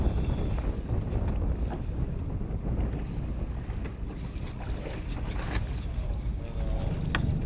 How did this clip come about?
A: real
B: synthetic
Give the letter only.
A